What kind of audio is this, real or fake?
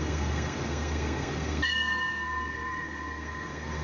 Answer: fake